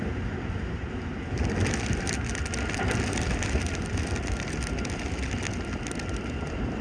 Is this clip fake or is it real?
real